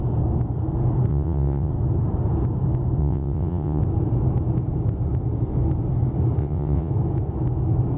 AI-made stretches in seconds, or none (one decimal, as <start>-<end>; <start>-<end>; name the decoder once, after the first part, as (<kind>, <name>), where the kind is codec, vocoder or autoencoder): 1.1-1.7 (vocoder, WaveNeXt); 3.0-3.8; 6.4-6.9